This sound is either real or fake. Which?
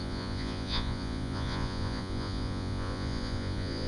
fake